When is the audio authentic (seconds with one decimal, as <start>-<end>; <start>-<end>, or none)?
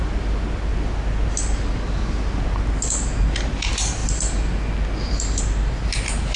0.0-6.4